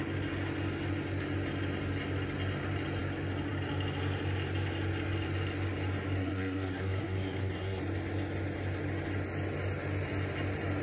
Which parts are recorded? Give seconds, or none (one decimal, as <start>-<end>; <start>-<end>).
0.0-6.2; 7.8-10.8